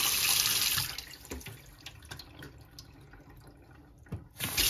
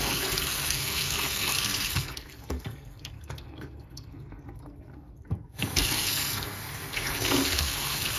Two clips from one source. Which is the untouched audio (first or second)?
first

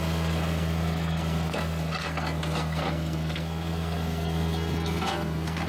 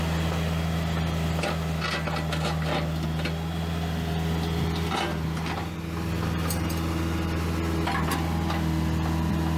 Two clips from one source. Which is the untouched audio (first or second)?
second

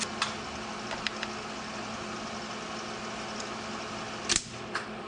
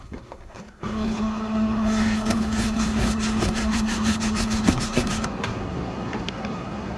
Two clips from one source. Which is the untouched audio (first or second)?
first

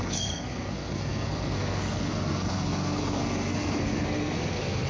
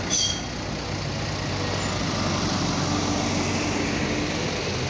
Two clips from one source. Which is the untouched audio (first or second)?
second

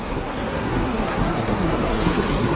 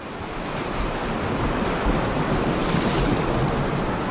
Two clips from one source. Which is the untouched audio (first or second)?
second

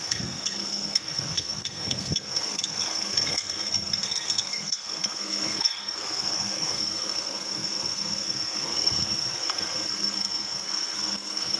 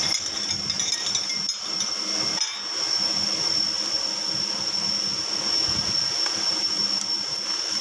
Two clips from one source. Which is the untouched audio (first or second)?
second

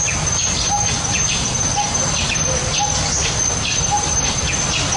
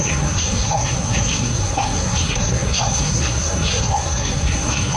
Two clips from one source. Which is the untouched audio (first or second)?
first